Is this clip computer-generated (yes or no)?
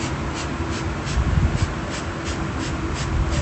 no